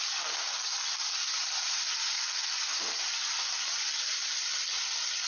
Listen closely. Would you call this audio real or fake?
real